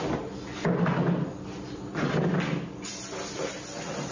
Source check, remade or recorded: recorded